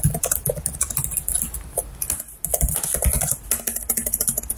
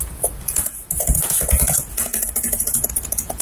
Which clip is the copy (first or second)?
second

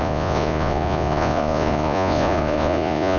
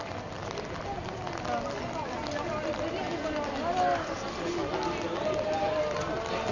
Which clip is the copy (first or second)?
first